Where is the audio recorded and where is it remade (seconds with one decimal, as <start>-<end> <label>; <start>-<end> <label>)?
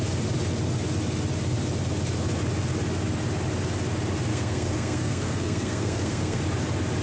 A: 0.0-4.3 recorded; 4.3-6.4 remade; 6.4-7.0 recorded